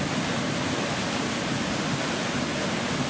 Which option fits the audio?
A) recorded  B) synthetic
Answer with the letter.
A